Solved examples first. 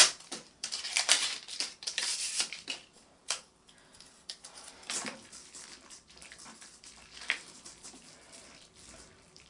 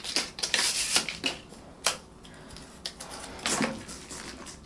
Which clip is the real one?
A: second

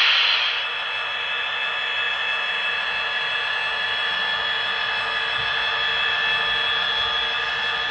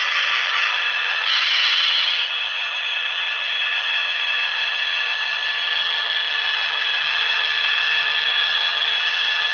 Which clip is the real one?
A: first